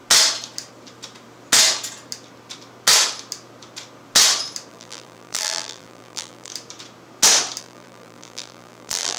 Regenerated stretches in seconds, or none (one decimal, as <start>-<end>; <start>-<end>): 4.7-6.5; 7.6-9.2